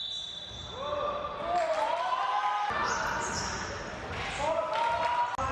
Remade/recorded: recorded